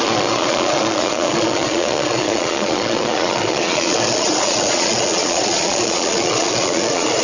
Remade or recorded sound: remade